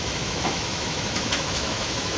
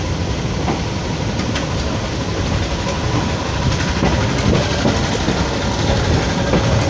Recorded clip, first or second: second